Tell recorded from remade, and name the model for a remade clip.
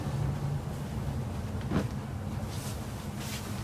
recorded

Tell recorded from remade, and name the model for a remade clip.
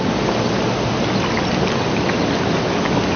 recorded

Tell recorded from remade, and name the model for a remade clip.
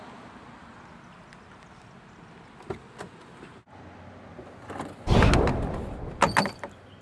recorded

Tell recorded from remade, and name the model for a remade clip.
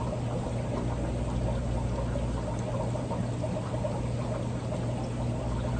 recorded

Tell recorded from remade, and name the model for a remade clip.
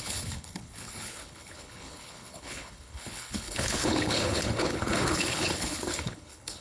remade, codec, HILCodec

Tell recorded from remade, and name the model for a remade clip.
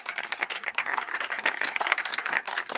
remade, codec, SNAC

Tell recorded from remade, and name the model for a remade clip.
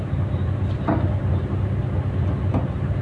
recorded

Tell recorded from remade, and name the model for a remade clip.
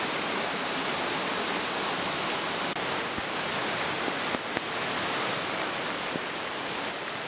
recorded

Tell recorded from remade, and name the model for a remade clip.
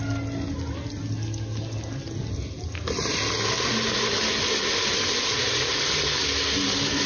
recorded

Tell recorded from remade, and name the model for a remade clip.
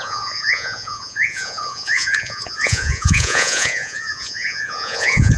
remade, vocoder, Vocos